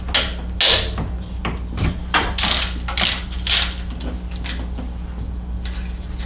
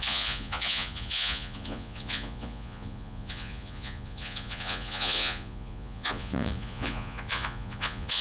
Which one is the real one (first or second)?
first